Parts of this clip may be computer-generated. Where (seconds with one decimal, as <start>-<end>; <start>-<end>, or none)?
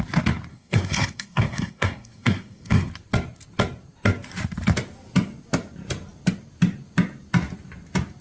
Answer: 0.5-2.9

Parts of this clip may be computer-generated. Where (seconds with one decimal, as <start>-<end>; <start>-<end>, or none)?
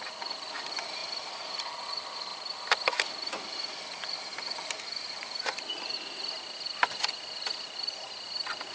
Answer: none